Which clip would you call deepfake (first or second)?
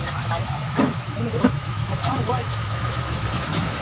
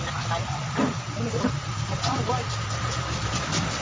first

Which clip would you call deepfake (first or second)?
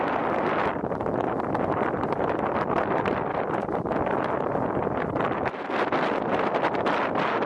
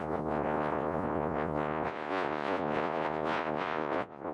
second